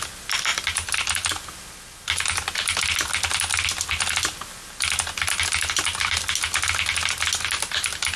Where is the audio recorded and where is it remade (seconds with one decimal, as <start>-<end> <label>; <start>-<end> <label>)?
0.0-8.2 recorded